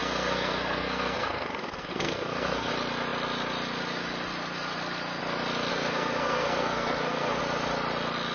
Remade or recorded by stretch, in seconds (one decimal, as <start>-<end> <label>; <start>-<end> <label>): 0.0-2.7 remade; 2.7-5.7 recorded; 5.7-7.4 remade; 7.4-8.3 recorded